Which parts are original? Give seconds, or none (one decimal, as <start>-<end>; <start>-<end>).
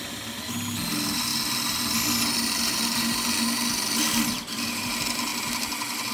0.0-6.1